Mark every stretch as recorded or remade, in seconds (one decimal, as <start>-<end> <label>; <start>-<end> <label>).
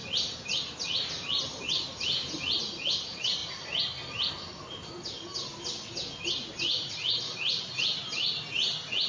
0.0-9.1 recorded